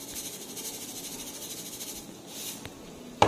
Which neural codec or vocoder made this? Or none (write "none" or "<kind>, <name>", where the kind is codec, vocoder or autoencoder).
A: none